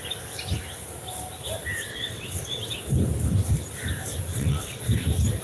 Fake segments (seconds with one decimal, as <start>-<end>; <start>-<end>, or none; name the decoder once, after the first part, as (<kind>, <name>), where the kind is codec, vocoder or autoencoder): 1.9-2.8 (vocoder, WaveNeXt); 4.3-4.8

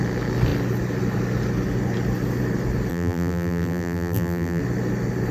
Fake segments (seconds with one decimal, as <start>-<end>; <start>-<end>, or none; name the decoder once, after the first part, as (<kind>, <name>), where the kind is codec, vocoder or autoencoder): 2.9-4.6 (vocoder, BigVGAN v2)

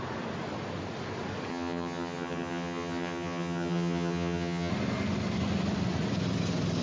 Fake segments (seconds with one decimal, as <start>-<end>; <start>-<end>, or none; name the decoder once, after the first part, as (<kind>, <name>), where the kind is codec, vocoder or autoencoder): 1.5-4.7 (vocoder, HiFi-GAN)

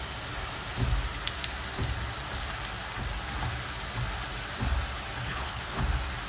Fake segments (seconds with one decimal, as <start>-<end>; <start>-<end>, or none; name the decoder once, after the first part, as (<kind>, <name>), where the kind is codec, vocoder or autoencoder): 5.3-5.8 (codec, HILCodec)